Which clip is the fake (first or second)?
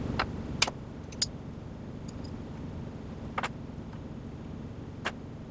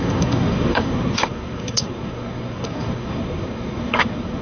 second